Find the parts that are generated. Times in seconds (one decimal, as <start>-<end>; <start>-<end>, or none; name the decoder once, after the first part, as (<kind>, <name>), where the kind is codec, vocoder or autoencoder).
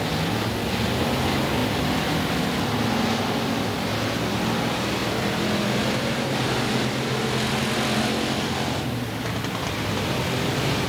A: 5.0-7.7 (vocoder, BigVGAN v2)